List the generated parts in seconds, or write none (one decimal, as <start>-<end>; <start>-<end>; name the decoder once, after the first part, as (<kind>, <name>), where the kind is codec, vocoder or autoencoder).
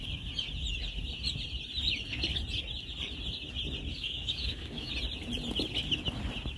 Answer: 3.9-4.9 (codec, DAC)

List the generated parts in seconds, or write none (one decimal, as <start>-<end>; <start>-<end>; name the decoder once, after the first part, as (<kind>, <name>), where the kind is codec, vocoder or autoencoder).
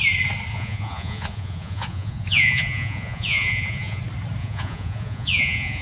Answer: 0.5-4.0 (vocoder, Vocos); 4.4-5.8